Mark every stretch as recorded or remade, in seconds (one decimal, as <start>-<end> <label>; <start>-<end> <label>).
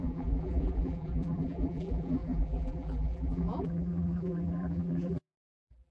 0.0-5.9 remade